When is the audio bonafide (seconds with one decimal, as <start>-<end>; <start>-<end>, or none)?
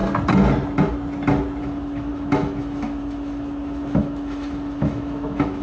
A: 0.0-1.6